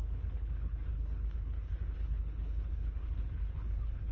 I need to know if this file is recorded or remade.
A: remade